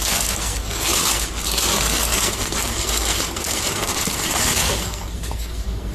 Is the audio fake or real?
fake